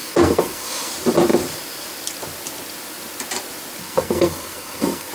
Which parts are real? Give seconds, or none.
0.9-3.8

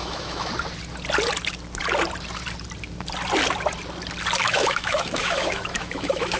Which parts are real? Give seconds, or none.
0.5-4.4